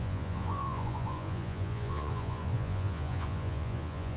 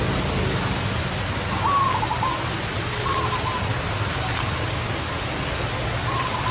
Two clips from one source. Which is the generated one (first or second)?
first